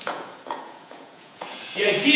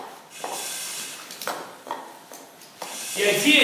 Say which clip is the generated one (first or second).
first